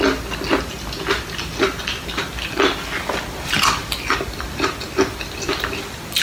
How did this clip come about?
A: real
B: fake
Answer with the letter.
A